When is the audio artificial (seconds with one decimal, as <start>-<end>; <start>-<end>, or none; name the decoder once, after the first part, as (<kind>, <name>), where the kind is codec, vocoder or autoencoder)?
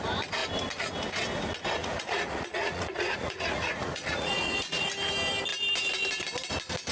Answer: 1.8-4.9 (vocoder, Vocos)